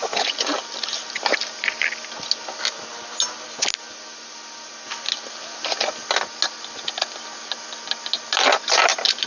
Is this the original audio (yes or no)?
yes